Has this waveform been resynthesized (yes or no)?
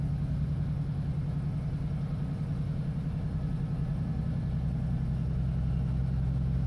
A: no